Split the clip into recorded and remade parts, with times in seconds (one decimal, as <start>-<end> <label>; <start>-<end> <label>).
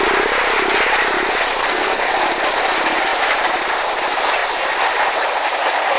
0.0-1.6 recorded; 1.6-2.1 remade; 2.1-6.0 recorded